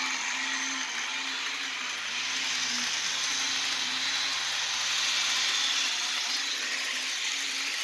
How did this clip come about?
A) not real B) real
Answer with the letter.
B